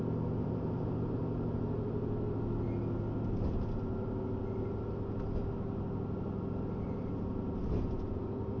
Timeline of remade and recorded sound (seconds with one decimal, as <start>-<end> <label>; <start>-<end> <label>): 0.0-0.4 recorded; 0.4-1.2 remade; 1.2-8.6 recorded